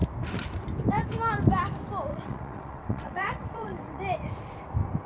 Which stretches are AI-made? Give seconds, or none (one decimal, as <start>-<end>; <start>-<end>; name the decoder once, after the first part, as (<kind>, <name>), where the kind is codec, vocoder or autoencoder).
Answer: 2.1-4.0 (vocoder, WaveNeXt)